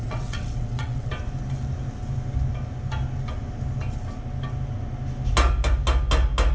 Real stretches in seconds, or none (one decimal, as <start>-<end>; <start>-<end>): 1.1-6.5